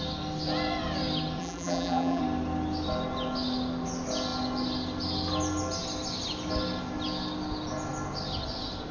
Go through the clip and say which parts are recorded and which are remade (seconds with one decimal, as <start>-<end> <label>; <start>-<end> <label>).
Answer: 0.0-1.4 recorded; 1.4-2.2 remade; 2.2-8.9 recorded